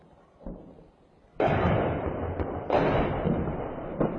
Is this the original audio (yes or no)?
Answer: no